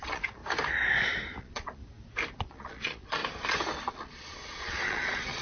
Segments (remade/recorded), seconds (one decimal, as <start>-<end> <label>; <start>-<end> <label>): 0.0-0.4 remade; 0.4-1.4 recorded; 1.4-1.8 remade; 1.8-2.4 recorded; 2.4-3.2 remade; 3.2-3.9 recorded; 3.9-5.4 remade